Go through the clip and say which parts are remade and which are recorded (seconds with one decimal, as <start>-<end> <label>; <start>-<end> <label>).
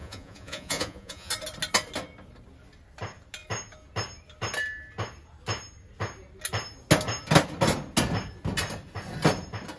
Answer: 0.0-1.3 remade; 1.3-9.8 recorded